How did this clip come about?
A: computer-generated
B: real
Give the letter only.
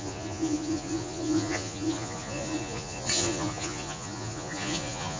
A